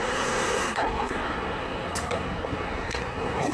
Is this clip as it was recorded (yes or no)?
no